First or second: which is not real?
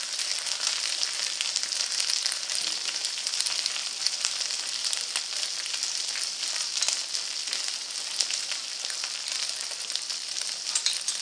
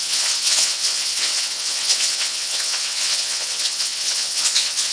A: second